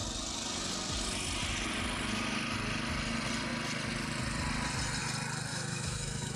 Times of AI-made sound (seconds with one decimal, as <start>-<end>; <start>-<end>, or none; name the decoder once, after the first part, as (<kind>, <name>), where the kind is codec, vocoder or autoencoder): 5.5-6.4 (autoencoder, DAC-VAE)